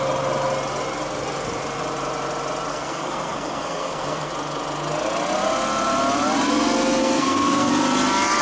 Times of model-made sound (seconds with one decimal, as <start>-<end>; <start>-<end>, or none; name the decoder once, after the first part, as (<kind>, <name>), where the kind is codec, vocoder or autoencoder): 2.7-4.3 (codec, SNAC); 7.0-7.7